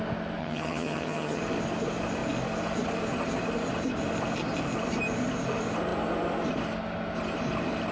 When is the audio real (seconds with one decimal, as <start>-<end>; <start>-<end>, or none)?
0.0-0.4; 1.4-7.9